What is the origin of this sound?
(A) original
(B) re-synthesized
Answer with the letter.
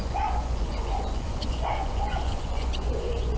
B